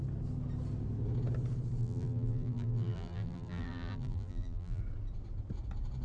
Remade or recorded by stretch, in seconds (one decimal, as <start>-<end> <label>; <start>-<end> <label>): 0.0-1.8 recorded; 1.8-4.8 remade; 4.8-6.0 recorded